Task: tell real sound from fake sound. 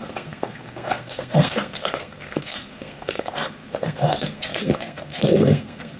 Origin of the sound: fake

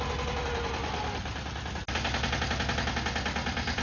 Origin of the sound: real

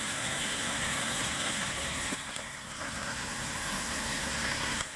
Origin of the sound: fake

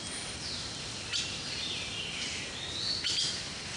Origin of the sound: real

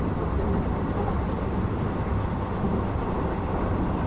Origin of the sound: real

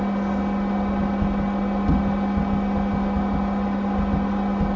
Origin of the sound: real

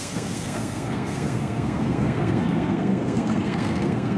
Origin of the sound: fake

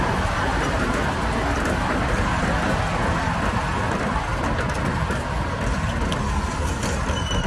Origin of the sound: real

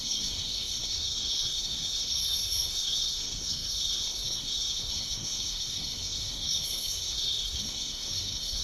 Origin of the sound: fake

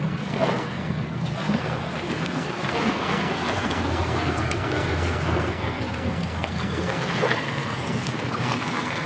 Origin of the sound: fake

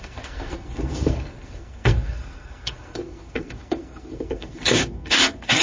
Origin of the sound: fake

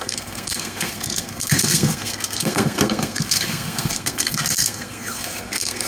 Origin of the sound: fake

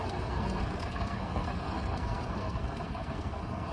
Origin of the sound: fake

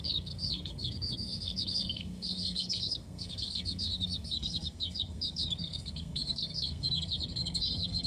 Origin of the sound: fake